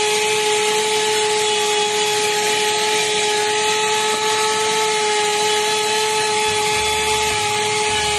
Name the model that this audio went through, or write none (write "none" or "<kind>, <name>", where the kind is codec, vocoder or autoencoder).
none